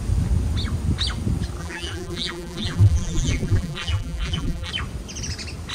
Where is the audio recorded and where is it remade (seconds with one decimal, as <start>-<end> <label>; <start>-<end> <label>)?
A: 0.0-1.6 recorded; 1.6-4.7 remade; 4.7-5.7 recorded